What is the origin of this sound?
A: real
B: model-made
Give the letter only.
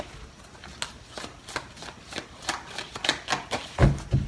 A